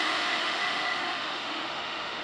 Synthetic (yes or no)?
yes